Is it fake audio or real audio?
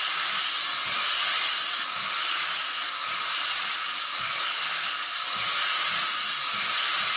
real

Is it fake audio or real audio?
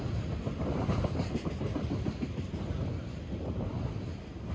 real